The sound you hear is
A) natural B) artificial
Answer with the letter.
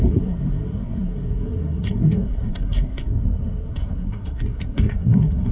B